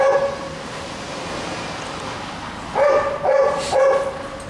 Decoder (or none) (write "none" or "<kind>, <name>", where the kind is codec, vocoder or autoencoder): none